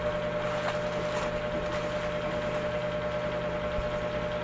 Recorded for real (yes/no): yes